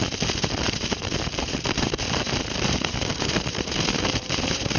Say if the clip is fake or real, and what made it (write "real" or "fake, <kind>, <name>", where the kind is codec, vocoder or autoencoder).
fake, vocoder, BigVGAN v2